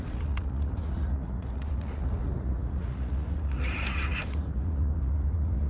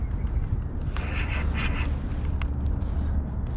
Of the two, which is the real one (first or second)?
second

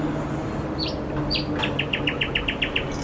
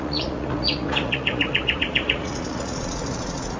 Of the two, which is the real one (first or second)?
first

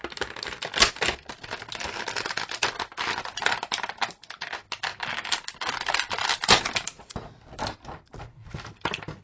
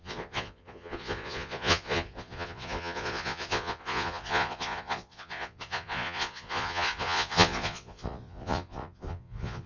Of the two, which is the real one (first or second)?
first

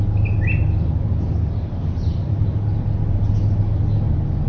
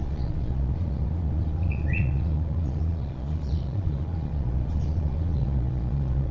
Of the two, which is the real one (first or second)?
first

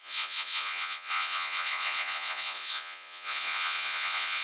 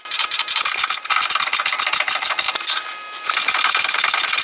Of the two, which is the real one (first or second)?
second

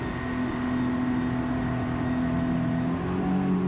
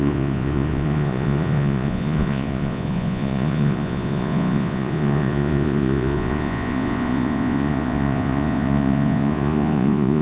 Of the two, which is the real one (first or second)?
first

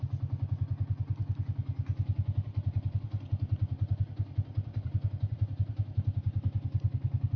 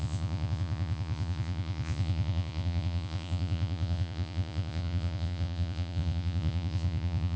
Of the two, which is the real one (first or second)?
first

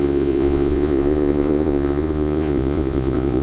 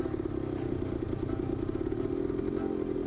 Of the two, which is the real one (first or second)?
second